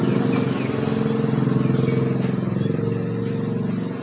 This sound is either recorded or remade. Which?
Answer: recorded